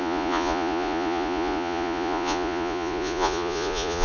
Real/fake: fake